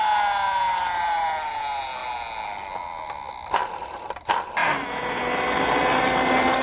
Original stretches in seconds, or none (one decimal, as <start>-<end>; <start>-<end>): 0.0-6.6